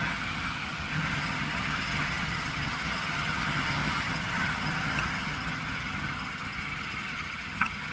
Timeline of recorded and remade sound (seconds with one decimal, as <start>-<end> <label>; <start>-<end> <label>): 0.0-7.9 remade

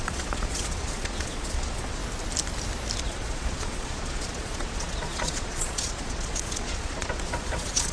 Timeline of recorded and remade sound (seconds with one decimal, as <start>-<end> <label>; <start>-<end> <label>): 0.0-2.0 remade; 2.0-3.0 recorded; 3.0-7.9 remade

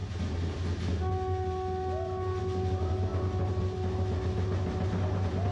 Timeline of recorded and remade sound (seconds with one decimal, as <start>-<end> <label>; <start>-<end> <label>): 0.0-5.5 recorded